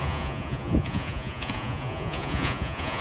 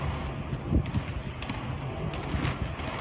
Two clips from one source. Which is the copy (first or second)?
first